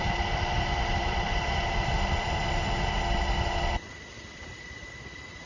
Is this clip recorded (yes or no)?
no